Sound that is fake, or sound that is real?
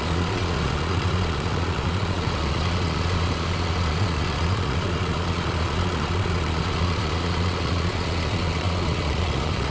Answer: fake